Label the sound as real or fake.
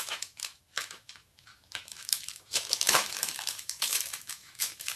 fake